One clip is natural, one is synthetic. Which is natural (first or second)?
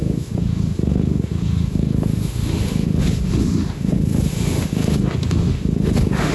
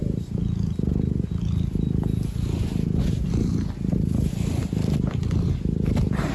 second